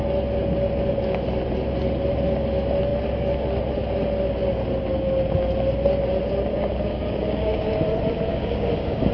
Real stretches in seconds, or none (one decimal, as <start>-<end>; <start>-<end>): 0.0-6.5; 7.8-8.3